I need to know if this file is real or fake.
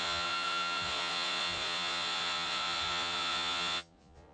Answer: fake